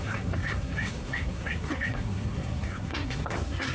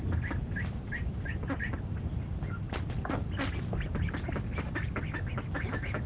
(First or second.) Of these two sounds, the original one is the second